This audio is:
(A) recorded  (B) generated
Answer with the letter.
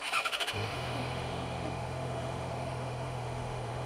B